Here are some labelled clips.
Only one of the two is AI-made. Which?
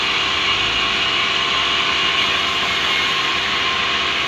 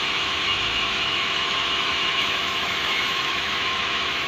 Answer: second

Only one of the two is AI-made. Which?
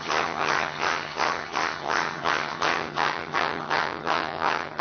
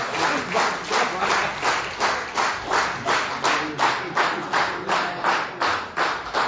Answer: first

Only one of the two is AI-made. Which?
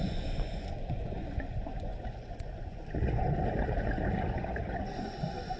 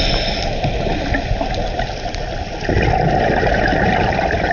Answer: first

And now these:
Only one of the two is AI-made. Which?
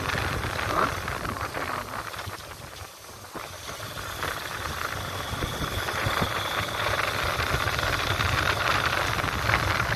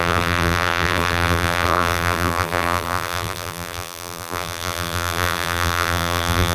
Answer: second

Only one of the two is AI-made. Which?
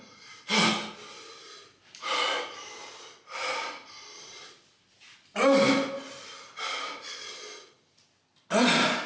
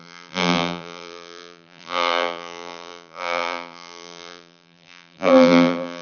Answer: second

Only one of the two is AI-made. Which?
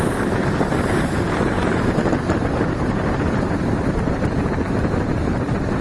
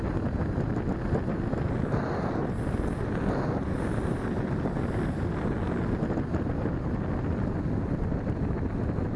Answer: first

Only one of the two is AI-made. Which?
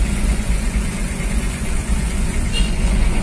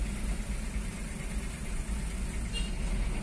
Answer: first